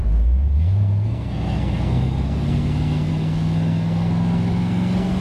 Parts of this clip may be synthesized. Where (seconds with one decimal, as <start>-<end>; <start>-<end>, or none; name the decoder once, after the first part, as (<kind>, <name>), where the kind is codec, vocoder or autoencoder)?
0.0-5.2 (codec, SNAC)